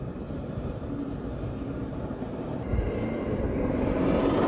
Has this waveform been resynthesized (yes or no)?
yes